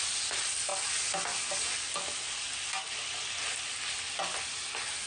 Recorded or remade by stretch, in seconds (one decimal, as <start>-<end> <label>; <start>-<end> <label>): 0.0-5.1 recorded